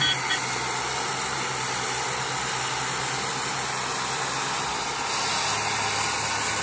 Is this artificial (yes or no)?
no